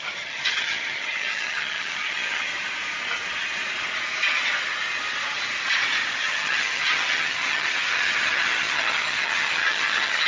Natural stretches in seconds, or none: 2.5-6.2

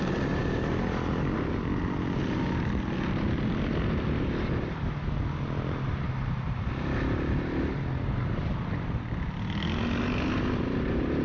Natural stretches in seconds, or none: 0.0-11.2

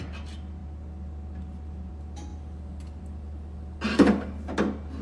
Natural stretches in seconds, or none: 0.0-3.9; 4.4-5.0